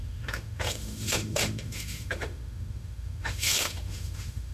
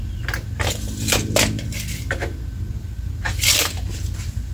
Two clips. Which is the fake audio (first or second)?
first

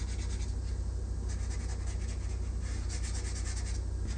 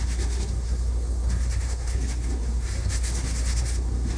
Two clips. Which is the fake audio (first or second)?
second